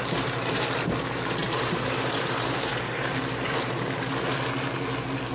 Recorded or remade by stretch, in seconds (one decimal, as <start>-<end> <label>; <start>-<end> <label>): 0.0-1.4 recorded; 1.4-3.2 remade; 3.2-5.3 recorded